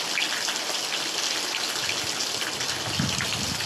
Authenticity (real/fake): real